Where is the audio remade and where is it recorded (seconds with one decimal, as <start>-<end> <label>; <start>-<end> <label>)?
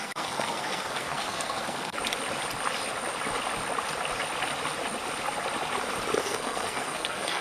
0.0-2.0 remade; 2.0-6.2 recorded; 6.2-7.4 remade